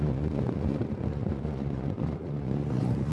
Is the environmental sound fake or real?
fake